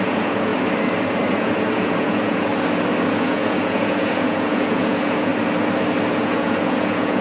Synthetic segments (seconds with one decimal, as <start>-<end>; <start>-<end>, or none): 0.0-0.5; 1.3-2.5; 3.1-5.3; 6.1-7.2